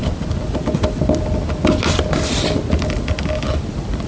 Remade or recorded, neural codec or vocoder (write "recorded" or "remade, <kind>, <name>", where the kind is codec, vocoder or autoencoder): recorded